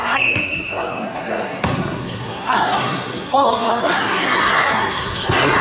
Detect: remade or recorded remade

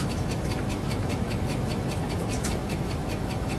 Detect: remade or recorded remade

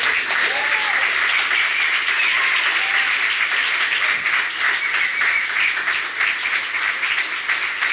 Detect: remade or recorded recorded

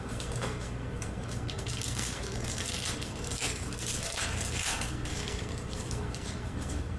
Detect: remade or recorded remade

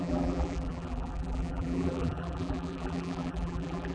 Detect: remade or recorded remade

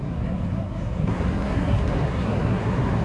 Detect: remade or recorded remade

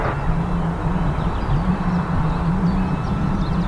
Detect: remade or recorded recorded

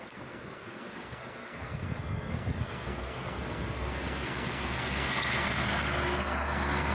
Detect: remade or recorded remade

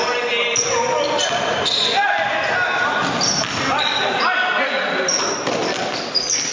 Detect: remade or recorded recorded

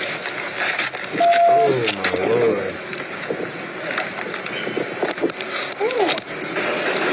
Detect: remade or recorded recorded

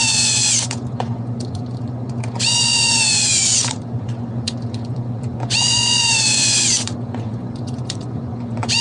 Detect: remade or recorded remade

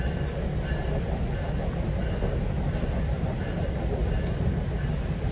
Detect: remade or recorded recorded